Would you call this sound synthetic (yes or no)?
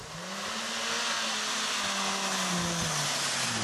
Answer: no